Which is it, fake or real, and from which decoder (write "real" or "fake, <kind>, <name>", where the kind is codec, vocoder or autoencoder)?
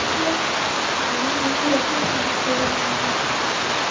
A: real